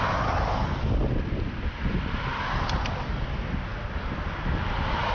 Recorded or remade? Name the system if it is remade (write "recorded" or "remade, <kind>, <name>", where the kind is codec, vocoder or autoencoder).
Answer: recorded